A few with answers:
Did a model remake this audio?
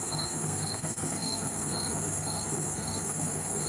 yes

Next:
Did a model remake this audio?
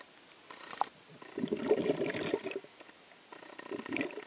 no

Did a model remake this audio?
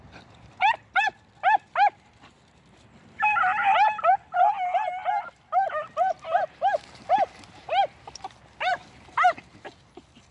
no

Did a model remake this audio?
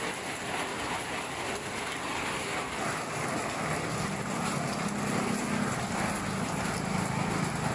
no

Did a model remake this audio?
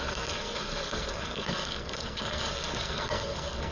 yes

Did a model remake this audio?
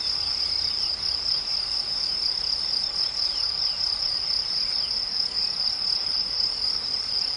no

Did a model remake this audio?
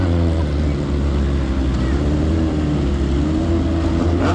no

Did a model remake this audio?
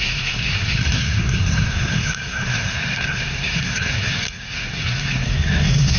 yes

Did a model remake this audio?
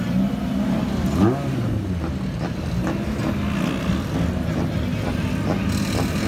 no